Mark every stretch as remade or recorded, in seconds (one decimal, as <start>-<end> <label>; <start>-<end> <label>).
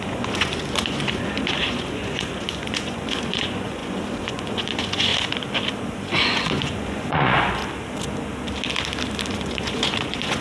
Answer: 0.0-5.1 remade; 5.1-5.8 recorded; 5.8-7.6 remade; 7.6-9.3 recorded; 9.3-10.4 remade